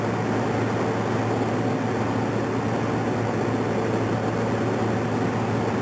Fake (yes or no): no